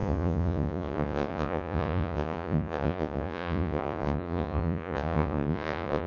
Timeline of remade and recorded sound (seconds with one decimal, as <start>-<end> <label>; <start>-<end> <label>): 0.0-6.1 remade